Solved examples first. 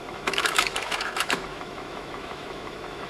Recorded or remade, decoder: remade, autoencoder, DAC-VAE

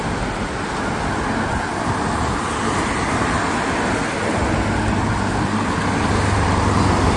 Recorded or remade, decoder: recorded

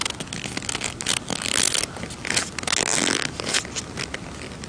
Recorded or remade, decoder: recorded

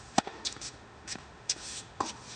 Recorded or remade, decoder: remade, autoencoder, DAC-VAE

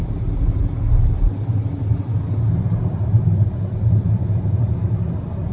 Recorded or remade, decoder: recorded